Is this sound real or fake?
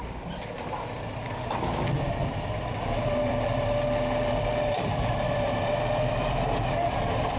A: fake